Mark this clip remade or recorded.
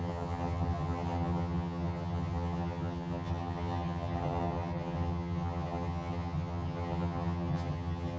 remade